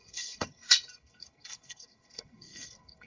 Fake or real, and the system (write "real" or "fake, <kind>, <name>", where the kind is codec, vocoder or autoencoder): fake, codec, SNAC